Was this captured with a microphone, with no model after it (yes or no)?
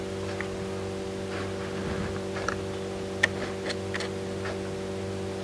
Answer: yes